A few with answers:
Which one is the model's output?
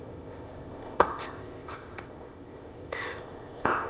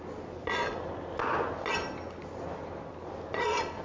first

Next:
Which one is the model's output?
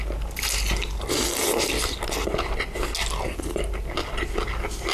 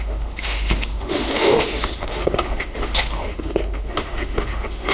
second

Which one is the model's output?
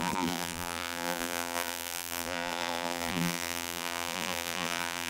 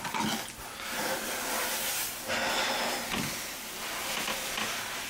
first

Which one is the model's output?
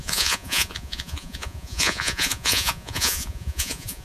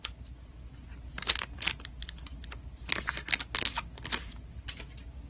first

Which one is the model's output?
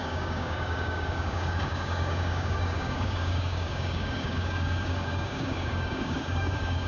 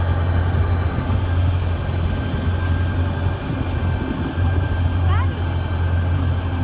first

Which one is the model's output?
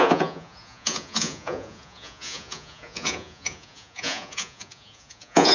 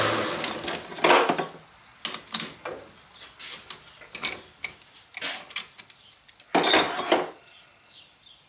first